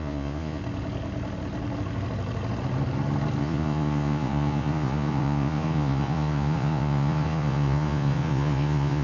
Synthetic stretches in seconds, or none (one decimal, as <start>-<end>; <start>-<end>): 0.0-0.6; 3.4-9.0